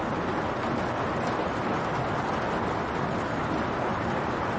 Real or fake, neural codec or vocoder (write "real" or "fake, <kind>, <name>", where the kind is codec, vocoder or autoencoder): real